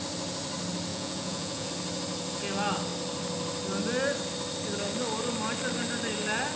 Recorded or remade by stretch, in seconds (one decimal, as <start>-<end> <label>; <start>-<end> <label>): 0.0-0.9 recorded; 0.9-1.7 remade; 1.7-6.6 recorded